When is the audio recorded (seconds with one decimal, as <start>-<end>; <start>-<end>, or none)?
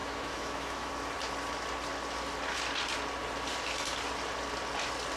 0.9-5.2